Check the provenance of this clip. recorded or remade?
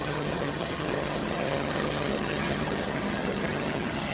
remade